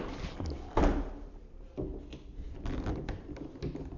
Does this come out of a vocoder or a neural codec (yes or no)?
no